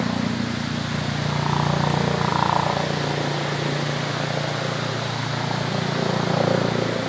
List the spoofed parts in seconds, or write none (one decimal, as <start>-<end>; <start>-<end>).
none